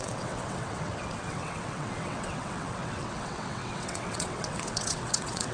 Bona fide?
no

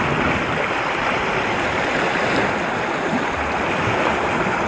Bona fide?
yes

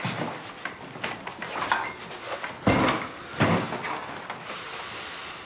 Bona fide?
yes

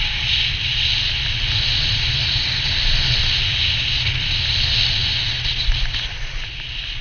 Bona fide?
yes